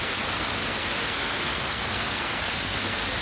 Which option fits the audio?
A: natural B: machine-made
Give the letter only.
B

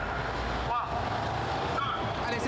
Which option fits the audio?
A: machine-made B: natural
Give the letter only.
B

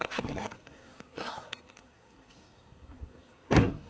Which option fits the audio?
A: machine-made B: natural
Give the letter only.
A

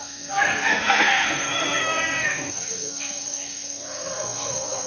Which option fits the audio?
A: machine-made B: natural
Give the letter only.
A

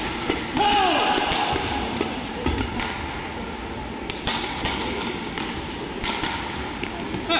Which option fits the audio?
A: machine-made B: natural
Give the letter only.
B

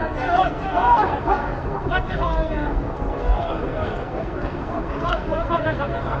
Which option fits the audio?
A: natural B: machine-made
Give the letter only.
B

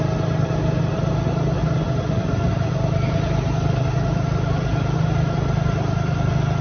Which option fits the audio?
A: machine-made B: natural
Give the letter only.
B